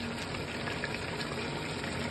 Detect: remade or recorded recorded